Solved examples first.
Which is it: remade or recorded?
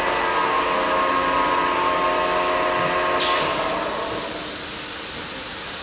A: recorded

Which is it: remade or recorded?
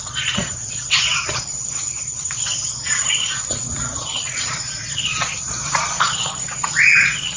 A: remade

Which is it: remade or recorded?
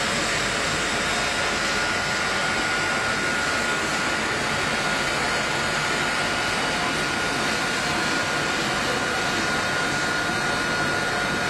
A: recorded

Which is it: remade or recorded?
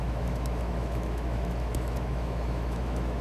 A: remade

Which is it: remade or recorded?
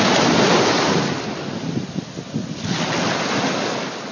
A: recorded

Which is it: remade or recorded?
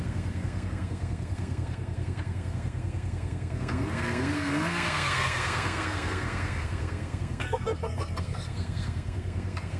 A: remade